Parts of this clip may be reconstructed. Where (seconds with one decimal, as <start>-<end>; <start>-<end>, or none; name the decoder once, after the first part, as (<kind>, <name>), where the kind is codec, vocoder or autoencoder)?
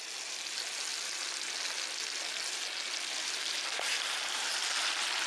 none